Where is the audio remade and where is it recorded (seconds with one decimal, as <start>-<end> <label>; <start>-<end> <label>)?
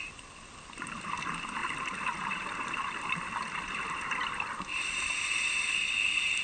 0.0-6.4 remade